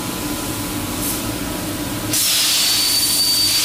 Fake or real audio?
real